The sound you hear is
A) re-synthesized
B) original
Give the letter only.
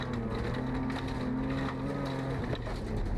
B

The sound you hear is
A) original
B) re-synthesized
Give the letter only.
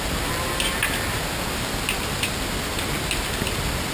A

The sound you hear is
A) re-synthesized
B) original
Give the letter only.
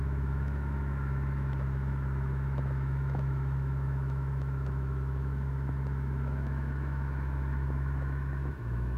A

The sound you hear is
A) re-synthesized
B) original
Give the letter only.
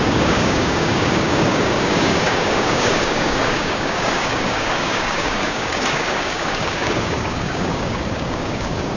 A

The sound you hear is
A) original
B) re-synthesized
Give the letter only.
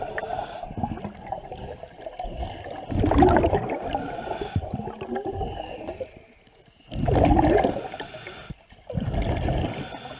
A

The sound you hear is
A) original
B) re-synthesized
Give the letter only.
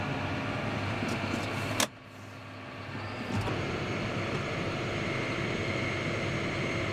A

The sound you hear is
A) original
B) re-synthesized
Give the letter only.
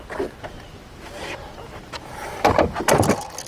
A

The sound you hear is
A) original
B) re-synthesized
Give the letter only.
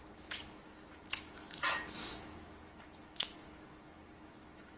B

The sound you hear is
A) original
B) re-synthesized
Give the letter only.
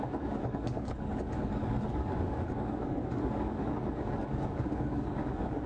B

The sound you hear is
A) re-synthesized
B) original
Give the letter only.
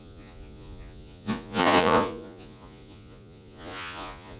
A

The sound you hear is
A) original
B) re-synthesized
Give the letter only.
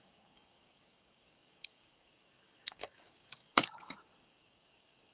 B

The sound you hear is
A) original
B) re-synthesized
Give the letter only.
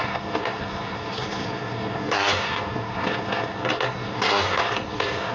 B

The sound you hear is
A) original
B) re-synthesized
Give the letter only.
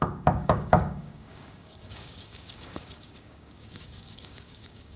B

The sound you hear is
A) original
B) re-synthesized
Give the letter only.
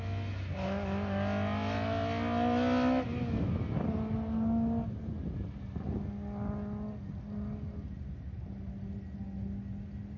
A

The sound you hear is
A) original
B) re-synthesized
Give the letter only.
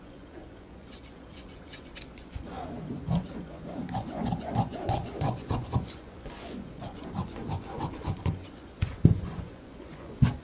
B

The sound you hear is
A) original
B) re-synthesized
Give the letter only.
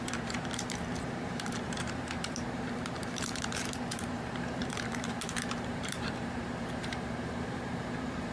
B